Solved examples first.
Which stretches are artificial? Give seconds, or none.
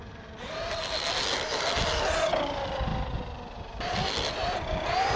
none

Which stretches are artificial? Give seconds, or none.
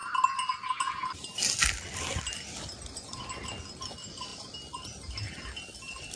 none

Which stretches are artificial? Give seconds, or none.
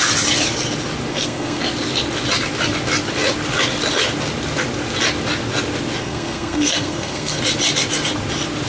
1.1-1.6 (codec, SNAC); 6.0-7.4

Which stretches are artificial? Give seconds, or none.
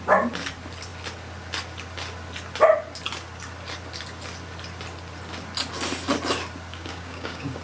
6.7-7.6 (codec, DAC)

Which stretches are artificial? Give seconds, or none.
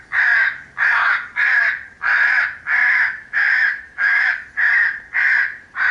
2.8-4.3 (autoencoder, DAC-VAE)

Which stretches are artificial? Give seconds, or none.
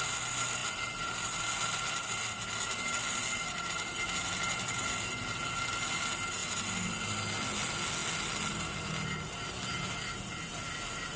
none